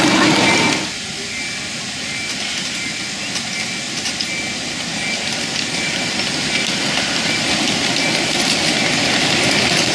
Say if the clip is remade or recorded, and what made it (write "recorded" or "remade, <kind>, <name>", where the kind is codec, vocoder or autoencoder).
recorded